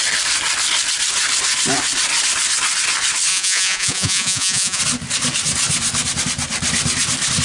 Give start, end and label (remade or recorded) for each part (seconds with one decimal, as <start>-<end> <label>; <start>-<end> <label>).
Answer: 0.0-3.3 recorded; 3.3-4.8 remade; 4.8-7.4 recorded